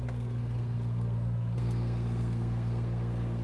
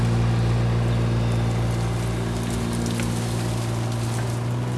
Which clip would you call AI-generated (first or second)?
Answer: first